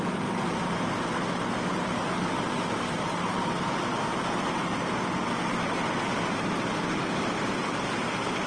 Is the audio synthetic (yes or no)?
no